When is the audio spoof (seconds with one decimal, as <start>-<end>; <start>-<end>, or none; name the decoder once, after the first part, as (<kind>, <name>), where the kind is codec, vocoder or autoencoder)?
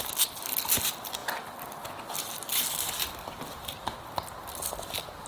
none